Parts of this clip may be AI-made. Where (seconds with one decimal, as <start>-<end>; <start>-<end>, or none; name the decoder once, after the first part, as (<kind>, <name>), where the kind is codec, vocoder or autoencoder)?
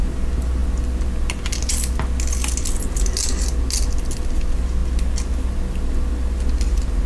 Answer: none